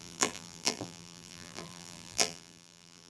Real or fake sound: fake